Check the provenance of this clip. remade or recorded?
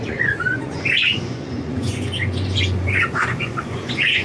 remade